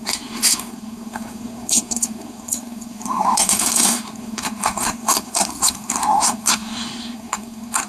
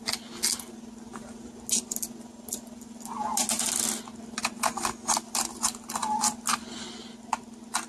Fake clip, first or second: first